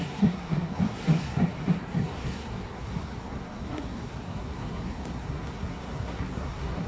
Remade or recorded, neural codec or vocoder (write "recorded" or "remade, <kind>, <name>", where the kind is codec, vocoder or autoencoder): remade, codec, SNAC